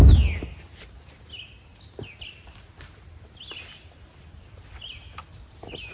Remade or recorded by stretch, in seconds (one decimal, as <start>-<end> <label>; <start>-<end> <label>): 0.0-5.9 recorded